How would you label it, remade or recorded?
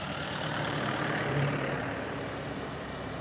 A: remade